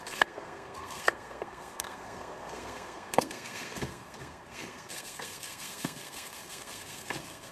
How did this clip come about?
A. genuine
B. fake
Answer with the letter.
B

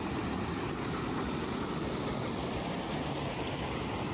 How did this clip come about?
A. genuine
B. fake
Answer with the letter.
A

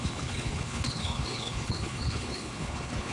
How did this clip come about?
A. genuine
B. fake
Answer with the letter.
B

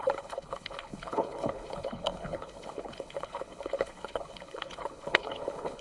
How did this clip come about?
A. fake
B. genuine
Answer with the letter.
A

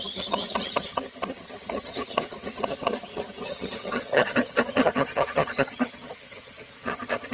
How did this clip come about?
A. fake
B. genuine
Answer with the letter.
A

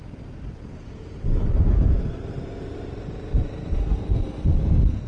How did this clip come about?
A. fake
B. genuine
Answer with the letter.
A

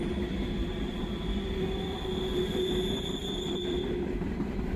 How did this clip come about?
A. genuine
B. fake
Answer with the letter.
B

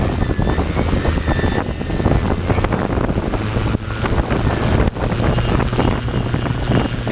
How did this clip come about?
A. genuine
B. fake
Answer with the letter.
A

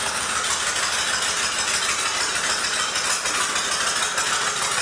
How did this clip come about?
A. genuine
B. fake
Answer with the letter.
A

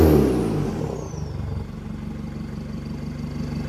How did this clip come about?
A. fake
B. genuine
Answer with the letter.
B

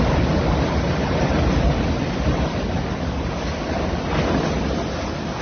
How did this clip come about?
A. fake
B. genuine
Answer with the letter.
B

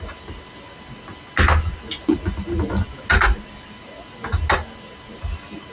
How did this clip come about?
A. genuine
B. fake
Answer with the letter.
A